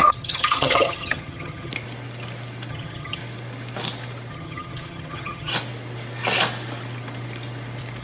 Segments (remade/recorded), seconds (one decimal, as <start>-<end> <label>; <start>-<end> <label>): 0.0-1.7 remade; 1.7-2.7 recorded; 2.7-3.2 remade; 3.2-4.3 recorded; 4.3-5.5 remade; 5.5-8.0 recorded